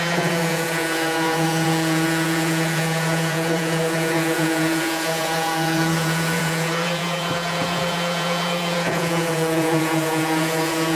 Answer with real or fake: fake